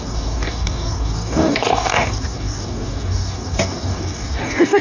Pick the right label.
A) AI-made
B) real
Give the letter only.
A